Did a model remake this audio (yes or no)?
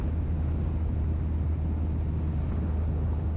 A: no